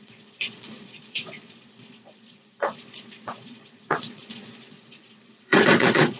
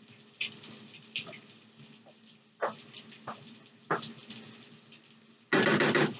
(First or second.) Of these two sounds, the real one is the second